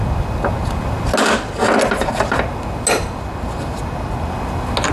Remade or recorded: recorded